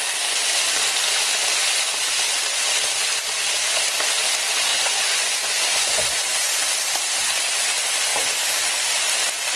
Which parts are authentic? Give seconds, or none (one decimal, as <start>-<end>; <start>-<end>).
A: 0.0-4.7; 6.6-9.6